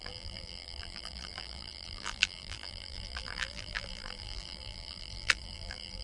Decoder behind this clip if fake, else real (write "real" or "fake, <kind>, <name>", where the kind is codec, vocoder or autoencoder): fake, vocoder, BigVGAN v2